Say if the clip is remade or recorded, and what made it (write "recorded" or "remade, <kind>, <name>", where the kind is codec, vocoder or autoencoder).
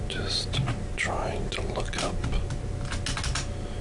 recorded